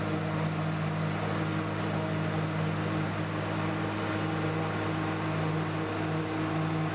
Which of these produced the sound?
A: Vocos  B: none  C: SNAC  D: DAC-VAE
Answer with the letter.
B